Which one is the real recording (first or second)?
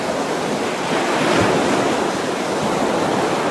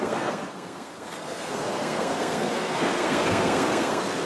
first